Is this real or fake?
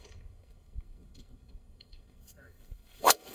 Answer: fake